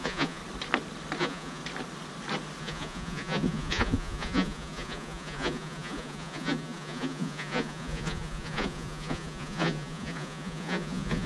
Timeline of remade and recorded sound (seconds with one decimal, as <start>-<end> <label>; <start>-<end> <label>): 0.0-0.4 remade; 0.4-1.2 recorded; 1.2-1.6 remade; 1.6-2.6 recorded; 2.6-11.3 remade